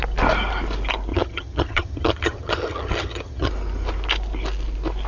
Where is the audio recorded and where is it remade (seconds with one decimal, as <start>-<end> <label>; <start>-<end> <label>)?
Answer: 0.0-1.1 recorded; 1.1-3.5 remade; 3.5-5.1 recorded